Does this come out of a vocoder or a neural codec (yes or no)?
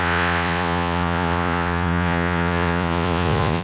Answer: yes